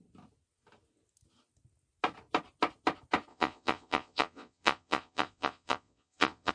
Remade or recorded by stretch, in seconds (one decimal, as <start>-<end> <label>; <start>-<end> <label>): 0.0-3.3 recorded; 3.3-6.5 remade